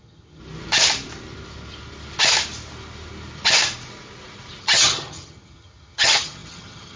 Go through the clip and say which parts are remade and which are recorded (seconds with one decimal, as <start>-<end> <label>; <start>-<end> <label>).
0.0-0.4 remade; 0.4-4.6 recorded; 4.6-7.0 remade